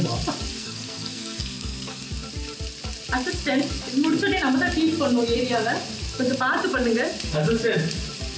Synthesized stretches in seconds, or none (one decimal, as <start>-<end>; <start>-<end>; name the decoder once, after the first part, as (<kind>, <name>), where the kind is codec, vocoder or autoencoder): 0.5-2.1 (codec, SNAC)